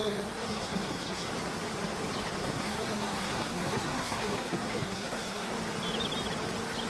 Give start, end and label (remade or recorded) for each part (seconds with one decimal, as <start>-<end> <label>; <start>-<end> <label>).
0.0-1.3 remade; 1.3-2.4 recorded; 2.4-5.5 remade; 5.5-6.9 recorded